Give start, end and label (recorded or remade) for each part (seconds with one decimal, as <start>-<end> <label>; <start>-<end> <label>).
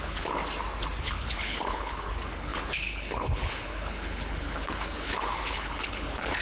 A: 0.0-0.4 remade; 0.4-1.0 recorded; 1.0-6.4 remade